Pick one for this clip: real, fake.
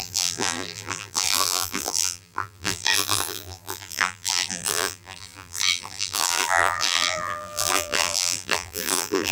fake